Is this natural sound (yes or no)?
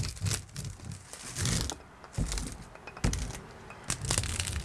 yes